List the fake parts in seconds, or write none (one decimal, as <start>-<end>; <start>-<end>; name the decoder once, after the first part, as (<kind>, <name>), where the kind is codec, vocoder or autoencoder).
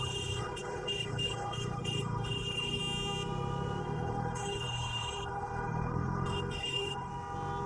0.0-2.8 (codec, HILCodec); 3.8-7.1